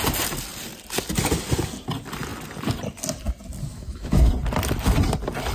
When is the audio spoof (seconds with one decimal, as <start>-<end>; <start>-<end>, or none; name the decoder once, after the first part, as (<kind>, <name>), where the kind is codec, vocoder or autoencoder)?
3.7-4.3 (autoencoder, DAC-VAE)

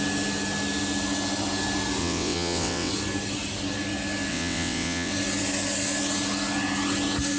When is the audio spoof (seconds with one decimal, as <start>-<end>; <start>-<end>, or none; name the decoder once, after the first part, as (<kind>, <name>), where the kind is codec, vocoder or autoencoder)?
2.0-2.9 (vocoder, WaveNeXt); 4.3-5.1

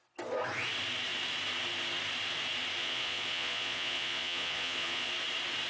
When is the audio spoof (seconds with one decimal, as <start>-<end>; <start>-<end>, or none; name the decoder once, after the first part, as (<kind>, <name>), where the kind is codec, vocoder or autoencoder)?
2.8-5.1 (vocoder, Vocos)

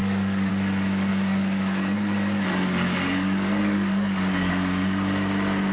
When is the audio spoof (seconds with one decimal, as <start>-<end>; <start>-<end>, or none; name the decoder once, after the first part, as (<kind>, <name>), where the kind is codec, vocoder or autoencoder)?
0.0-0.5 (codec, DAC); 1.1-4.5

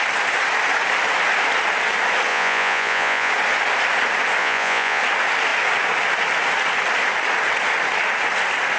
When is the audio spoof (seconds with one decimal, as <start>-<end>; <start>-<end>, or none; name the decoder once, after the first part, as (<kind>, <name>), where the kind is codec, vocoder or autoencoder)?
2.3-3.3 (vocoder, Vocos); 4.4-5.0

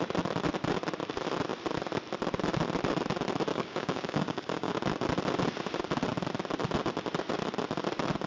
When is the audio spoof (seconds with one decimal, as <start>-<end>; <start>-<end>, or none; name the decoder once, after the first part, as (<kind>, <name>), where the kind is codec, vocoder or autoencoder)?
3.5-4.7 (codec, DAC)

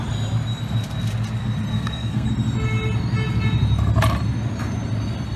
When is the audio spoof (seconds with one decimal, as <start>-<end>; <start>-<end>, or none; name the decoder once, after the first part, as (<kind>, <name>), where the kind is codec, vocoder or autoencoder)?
1.7-2.3 (codec, SNAC)

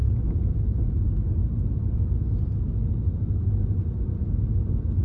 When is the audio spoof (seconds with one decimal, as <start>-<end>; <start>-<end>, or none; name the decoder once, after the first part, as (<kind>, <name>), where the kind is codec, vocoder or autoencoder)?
0.0-0.9 (vocoder, Vocos)